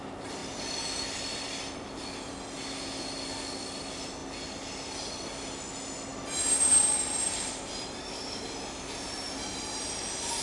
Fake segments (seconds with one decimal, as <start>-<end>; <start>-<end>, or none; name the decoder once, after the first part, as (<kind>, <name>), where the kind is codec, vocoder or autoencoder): 4.2-4.9 (vocoder, BigVGAN v2); 6.1-8.4